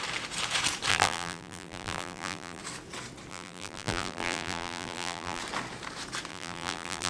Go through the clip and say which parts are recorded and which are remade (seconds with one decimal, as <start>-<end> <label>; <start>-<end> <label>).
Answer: 0.0-0.9 recorded; 0.9-2.6 remade; 2.6-3.3 recorded; 3.3-5.4 remade; 5.4-6.3 recorded; 6.3-7.1 remade